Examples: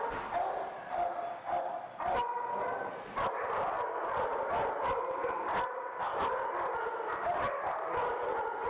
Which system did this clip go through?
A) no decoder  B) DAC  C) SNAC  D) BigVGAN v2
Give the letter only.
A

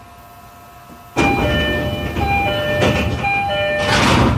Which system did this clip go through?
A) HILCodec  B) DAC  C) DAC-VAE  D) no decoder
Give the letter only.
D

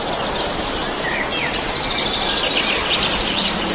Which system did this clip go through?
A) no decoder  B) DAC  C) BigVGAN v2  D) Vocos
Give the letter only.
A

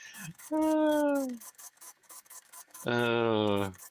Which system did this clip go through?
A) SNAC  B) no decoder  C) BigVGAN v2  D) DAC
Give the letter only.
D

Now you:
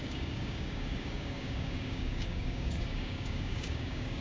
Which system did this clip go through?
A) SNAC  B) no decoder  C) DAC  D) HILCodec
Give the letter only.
C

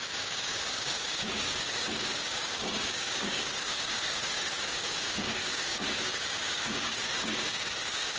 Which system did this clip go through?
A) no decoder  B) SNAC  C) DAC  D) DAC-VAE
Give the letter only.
C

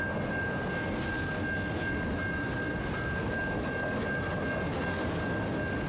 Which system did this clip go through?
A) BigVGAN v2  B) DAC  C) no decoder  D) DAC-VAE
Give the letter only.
C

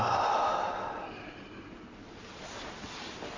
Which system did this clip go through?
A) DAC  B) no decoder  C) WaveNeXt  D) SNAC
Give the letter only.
B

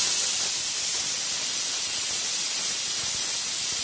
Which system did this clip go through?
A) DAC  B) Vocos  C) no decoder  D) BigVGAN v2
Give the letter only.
C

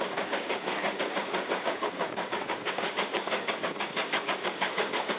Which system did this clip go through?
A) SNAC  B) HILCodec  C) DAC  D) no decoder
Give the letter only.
C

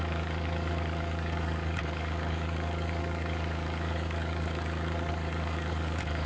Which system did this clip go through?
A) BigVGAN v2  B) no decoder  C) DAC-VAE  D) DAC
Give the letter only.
D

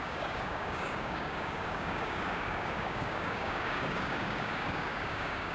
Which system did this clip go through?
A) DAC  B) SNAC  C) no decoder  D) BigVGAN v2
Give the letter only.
A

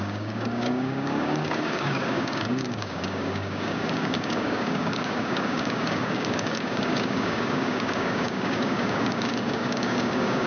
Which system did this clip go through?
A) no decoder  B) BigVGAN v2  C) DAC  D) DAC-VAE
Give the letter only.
C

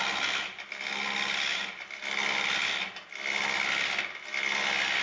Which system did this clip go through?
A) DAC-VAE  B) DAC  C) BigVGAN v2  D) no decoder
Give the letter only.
D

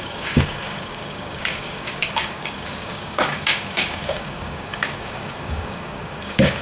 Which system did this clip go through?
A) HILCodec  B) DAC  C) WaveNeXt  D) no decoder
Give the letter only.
B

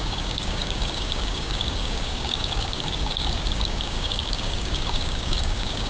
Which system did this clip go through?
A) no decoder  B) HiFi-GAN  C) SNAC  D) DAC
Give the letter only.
D